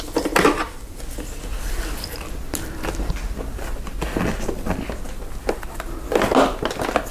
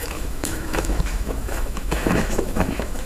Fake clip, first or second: second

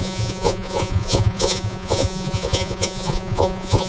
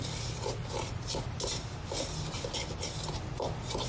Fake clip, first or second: first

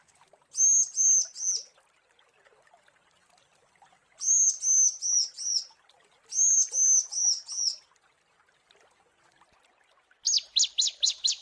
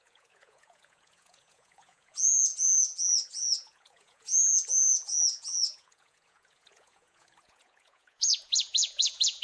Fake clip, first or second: second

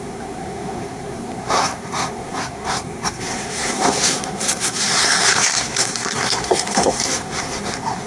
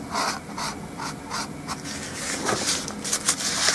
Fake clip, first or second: first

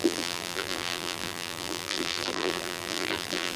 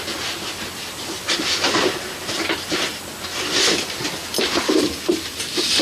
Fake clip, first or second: first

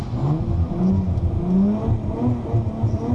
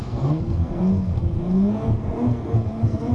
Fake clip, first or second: second